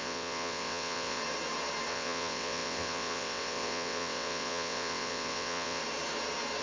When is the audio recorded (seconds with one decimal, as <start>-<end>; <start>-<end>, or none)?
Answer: 1.2-1.9; 5.8-6.6